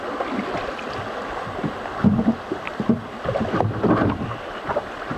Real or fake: real